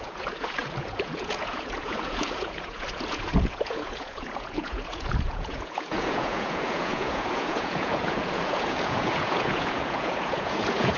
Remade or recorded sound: remade